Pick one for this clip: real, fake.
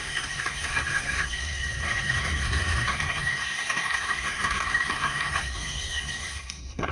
fake